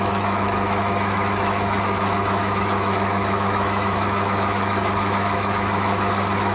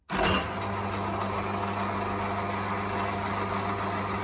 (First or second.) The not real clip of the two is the first